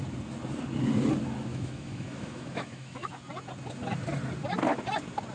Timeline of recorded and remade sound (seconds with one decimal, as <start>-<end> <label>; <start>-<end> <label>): 0.0-1.5 recorded; 1.5-3.1 remade; 3.1-5.3 recorded